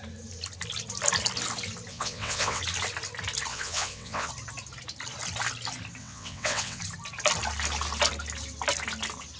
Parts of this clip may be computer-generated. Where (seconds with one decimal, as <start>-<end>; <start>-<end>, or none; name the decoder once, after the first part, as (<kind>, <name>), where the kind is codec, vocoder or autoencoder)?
1.9-2.6 (vocoder, WaveNeXt); 3.5-4.3; 6.0-6.8